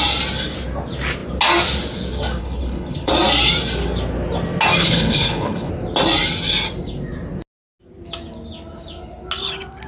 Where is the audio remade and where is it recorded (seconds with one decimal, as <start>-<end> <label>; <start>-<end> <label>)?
0.0-2.4 recorded; 2.4-3.1 remade; 3.1-4.8 recorded; 4.8-5.7 remade; 5.7-9.9 recorded